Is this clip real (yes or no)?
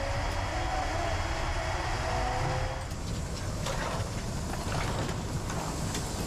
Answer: yes